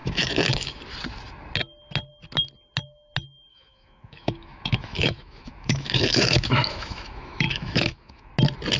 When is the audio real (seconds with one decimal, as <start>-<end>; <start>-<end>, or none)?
0.8-3.5; 8.3-8.8